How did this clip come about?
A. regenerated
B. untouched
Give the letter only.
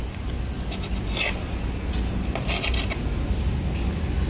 B